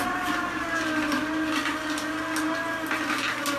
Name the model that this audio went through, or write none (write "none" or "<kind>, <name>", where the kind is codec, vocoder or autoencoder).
none